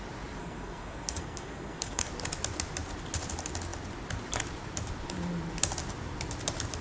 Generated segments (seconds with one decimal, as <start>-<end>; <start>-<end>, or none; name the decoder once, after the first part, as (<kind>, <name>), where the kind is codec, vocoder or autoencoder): 0.4-2.1 (codec, SNAC)